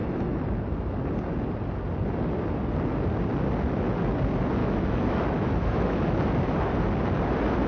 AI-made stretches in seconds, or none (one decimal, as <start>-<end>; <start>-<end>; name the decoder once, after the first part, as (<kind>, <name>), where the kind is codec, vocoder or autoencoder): 0.0-0.5 (autoencoder, DAC-VAE); 4.6-6.0